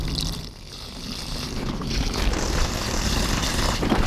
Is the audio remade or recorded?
remade